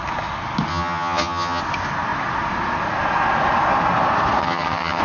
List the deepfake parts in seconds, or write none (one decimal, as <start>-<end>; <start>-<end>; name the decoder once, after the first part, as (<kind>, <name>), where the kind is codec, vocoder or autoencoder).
0.7-1.6 (vocoder, HiFi-GAN); 4.4-5.0